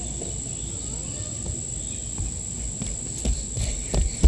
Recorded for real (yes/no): yes